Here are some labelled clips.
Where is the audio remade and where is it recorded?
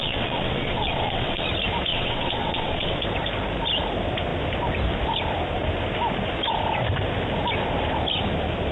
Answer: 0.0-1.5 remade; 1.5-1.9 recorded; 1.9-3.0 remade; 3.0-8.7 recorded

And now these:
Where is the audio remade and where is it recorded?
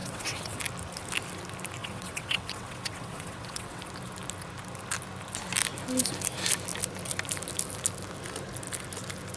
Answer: 0.0-0.6 remade; 0.6-1.8 recorded; 1.8-3.8 remade; 3.8-9.4 recorded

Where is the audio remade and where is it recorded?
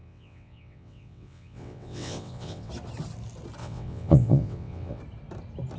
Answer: 0.0-2.7 remade; 2.7-3.6 recorded; 3.6-5.0 remade; 5.0-5.8 recorded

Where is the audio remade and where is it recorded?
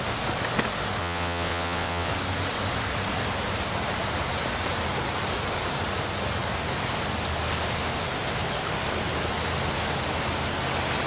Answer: 0.0-1.0 recorded; 1.0-2.1 remade; 2.1-11.1 recorded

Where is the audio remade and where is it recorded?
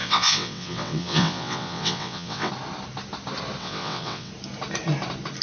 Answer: 0.0-2.5 remade; 2.5-3.6 recorded; 3.6-4.3 remade; 4.3-5.4 recorded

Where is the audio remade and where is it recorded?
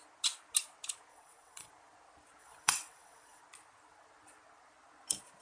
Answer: 0.0-1.1 recorded; 1.1-1.7 remade; 1.7-2.4 recorded; 2.4-3.4 remade; 3.4-5.4 recorded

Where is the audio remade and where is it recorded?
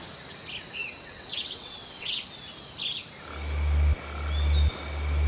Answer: 0.0-0.8 recorded; 0.8-2.2 remade; 2.2-5.3 recorded